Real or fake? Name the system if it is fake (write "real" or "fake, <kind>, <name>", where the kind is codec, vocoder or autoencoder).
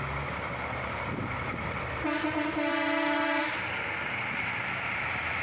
fake, vocoder, BigVGAN v2